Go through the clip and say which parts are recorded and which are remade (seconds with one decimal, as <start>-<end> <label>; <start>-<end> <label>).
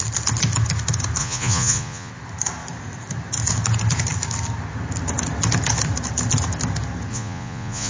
0.0-1.2 recorded; 1.2-2.1 remade; 2.1-7.1 recorded; 7.1-7.9 remade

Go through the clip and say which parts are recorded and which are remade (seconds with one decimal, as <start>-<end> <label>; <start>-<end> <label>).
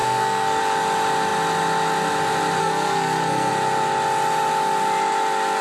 0.0-0.6 remade; 0.6-2.6 recorded; 2.6-3.5 remade; 3.5-5.6 recorded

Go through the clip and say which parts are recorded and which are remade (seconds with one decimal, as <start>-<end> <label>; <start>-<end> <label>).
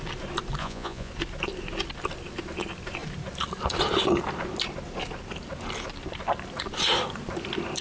0.0-0.6 recorded; 0.6-1.1 remade; 1.1-7.8 recorded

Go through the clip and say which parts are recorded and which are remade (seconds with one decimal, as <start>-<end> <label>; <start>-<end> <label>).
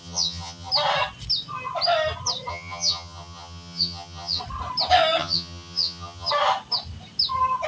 0.0-0.7 remade; 0.7-2.5 recorded; 2.5-4.4 remade; 4.4-5.2 recorded; 5.2-6.3 remade; 6.3-7.7 recorded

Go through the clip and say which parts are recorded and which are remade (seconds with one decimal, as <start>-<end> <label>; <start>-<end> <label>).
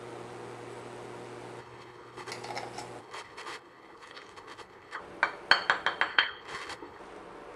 0.0-1.6 recorded; 1.6-2.3 remade; 2.3-3.0 recorded; 3.0-5.0 remade; 5.0-6.1 recorded; 6.1-7.0 remade; 7.0-7.6 recorded